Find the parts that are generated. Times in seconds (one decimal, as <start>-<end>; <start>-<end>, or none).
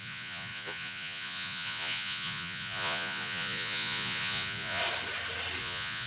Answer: 0.0-4.8; 5.6-6.1